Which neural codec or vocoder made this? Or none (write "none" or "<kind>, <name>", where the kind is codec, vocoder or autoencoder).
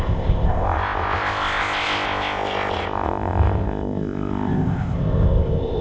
codec, ZipCodec